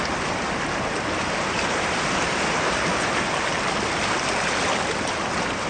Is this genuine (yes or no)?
yes